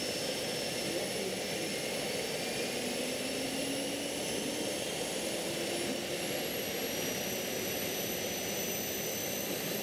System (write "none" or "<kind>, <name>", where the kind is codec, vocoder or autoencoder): none